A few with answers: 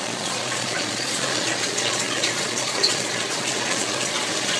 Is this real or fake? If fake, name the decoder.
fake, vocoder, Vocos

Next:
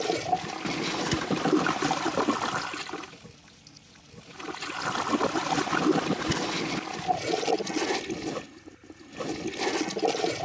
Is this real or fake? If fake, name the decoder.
real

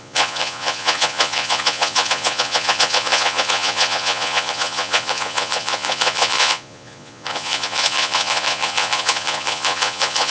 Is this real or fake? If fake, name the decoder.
fake, vocoder, Vocos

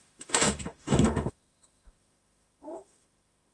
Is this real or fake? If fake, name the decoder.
fake, autoencoder, DAC-VAE